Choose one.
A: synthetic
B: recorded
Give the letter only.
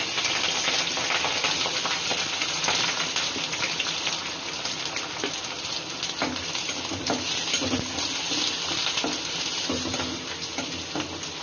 B